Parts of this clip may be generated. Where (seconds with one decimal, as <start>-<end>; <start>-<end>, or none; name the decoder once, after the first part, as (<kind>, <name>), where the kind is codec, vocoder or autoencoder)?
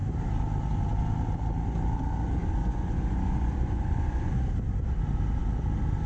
2.4-4.3 (vocoder, Vocos)